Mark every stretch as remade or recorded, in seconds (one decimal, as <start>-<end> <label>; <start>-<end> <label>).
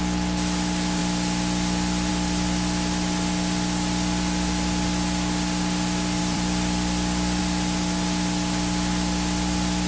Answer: 0.0-6.2 recorded; 6.2-7.4 remade; 7.4-9.9 recorded